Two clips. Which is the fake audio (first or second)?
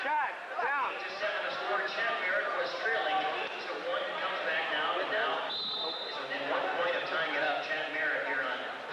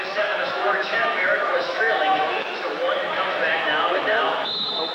second